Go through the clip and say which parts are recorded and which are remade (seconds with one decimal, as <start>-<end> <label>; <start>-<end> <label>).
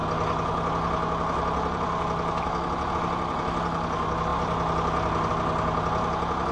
0.0-6.5 recorded